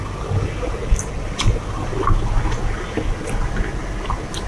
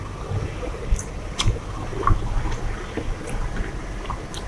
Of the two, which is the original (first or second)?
first